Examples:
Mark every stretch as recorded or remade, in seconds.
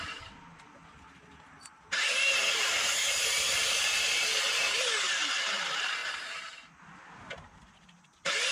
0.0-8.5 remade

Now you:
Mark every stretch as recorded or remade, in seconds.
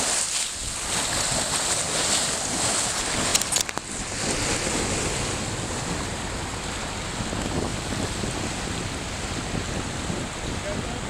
0.0-11.1 recorded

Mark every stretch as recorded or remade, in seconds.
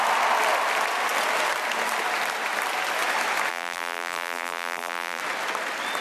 0.0-3.5 recorded; 3.5-5.2 remade; 5.2-6.0 recorded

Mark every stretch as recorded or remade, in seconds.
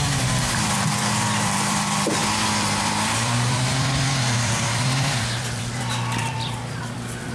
0.0-7.3 remade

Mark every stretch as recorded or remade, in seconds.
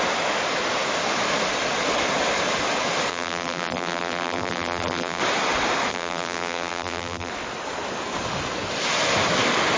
0.0-3.1 recorded; 3.1-5.2 remade; 5.2-5.9 recorded; 5.9-7.3 remade; 7.3-9.8 recorded